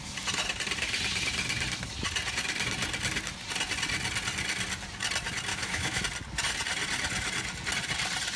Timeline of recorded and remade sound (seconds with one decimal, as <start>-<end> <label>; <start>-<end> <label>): 0.0-5.5 recorded; 5.5-6.0 remade; 6.0-8.4 recorded